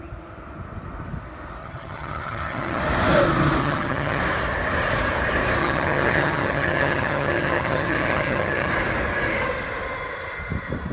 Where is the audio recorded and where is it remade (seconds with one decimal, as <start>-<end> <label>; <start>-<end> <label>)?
0.0-1.6 recorded; 1.6-2.8 remade; 2.8-3.6 recorded; 3.6-4.2 remade; 4.2-5.6 recorded; 5.6-8.7 remade; 8.7-10.9 recorded